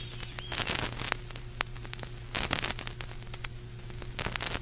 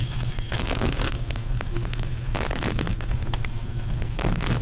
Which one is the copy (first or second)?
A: second